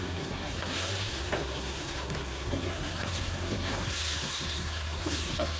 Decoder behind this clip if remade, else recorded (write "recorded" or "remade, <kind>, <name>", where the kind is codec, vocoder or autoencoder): remade, codec, SNAC